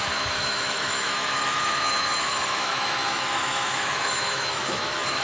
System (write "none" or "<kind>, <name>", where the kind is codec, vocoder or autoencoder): autoencoder, DAC-VAE